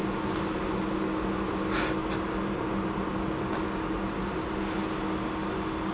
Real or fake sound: real